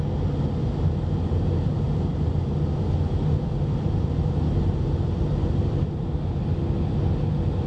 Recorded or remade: recorded